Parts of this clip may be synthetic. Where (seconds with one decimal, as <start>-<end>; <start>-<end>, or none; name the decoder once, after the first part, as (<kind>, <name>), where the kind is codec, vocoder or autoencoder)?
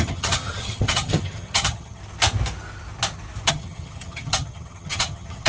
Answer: 0.0-2.0 (vocoder, HiFi-GAN); 3.5-5.5